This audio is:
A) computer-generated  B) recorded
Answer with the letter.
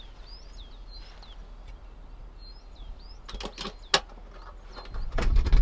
B